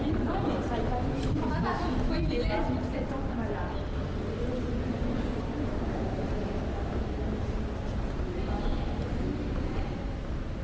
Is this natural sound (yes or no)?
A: yes